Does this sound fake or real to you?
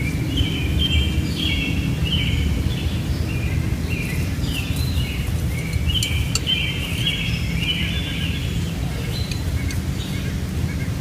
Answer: real